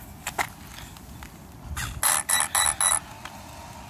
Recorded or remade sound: recorded